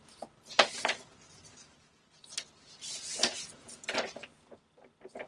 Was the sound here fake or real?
real